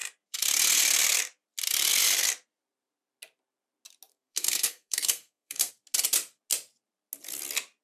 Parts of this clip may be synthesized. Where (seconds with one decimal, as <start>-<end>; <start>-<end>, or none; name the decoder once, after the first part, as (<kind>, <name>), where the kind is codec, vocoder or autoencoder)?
4.1-5.7 (codec, SNAC)